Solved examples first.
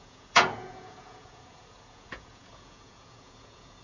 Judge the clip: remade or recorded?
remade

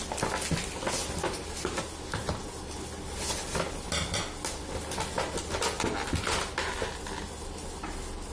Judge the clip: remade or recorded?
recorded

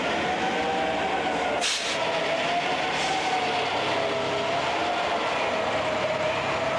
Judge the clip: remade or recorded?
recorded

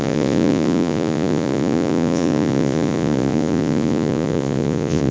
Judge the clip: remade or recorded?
remade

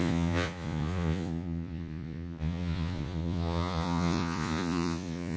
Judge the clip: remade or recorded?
remade